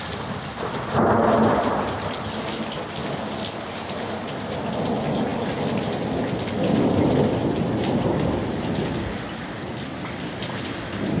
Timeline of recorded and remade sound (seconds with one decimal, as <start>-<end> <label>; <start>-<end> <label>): 0.0-11.2 recorded